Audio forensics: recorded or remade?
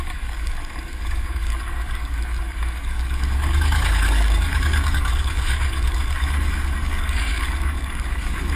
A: remade